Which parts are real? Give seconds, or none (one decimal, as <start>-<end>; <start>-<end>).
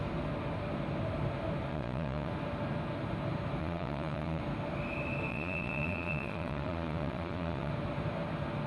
0.0-1.7; 2.3-3.6; 4.4-5.3; 7.7-8.7